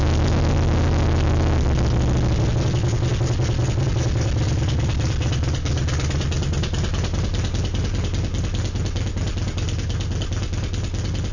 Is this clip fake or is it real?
real